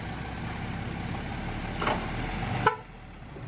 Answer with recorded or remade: recorded